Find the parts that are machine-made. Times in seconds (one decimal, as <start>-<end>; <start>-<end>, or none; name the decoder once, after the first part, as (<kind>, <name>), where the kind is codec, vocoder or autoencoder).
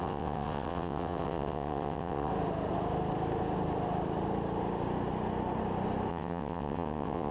0.0-2.3 (vocoder, WaveNeXt); 6.1-7.3